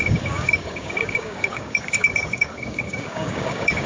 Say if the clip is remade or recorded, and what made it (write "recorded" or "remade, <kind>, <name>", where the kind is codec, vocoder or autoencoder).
remade, codec, DAC